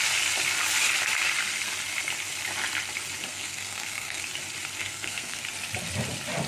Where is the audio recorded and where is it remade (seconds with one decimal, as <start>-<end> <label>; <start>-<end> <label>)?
0.0-3.3 recorded; 3.3-4.2 remade; 4.2-4.8 recorded; 4.8-5.4 remade; 5.4-6.5 recorded